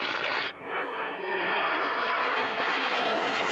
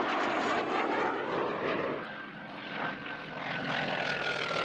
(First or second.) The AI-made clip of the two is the first